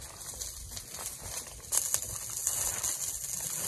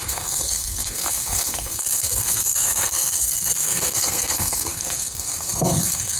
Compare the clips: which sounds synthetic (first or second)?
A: second